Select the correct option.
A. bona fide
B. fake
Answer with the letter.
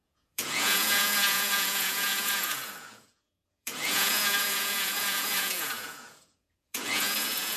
B